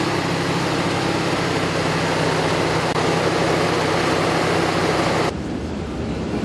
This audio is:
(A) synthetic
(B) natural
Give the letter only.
B